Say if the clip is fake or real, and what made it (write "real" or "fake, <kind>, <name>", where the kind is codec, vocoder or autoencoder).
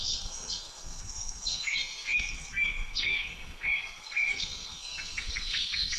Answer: fake, codec, SNAC